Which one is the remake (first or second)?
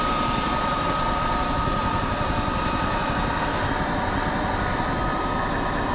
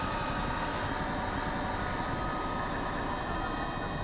first